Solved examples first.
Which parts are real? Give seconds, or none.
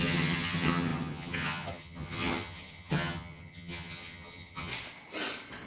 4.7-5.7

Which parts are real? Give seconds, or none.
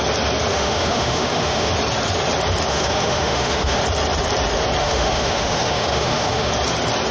0.0-0.5; 1.7-2.7; 3.8-4.8; 6.5-7.1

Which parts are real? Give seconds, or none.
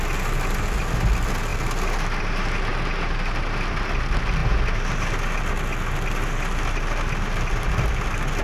0.0-8.4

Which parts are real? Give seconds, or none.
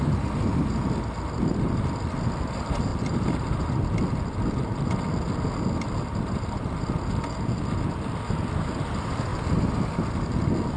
0.0-10.8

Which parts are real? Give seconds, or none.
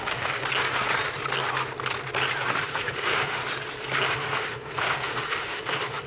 0.4-2.6; 3.4-4.1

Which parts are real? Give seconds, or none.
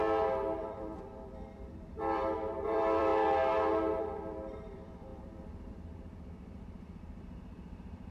0.0-0.6; 3.1-4.0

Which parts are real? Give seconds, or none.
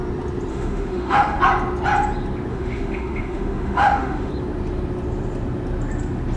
0.0-0.5; 1.4-2.5; 4.3-6.4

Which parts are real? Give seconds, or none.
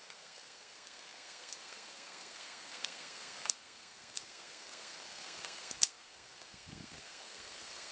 none